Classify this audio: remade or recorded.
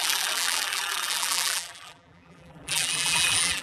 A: remade